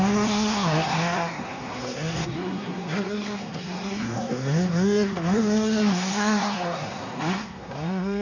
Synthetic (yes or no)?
yes